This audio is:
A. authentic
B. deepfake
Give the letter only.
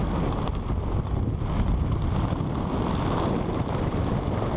A